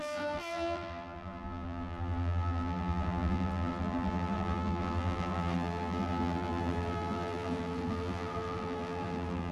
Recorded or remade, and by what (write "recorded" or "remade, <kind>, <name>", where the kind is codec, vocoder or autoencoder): remade, vocoder, BigVGAN v2